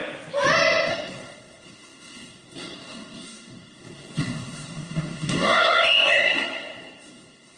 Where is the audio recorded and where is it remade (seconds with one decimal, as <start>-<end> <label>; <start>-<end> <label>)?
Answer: 0.0-0.9 recorded; 0.9-7.6 remade